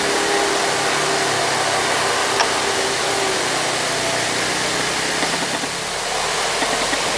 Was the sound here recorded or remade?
recorded